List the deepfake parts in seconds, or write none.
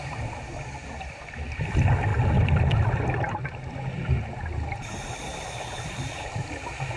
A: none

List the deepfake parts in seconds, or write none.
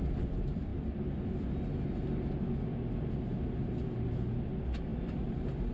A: none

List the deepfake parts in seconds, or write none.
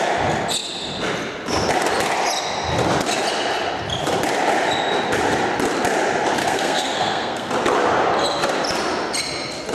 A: 6.4-7.5